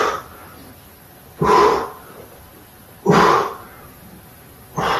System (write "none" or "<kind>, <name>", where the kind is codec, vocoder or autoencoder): none